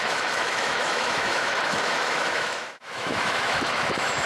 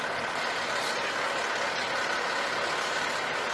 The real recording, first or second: second